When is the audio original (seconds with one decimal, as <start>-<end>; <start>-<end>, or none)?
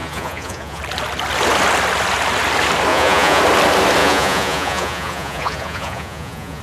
0.8-2.9; 3.4-4.0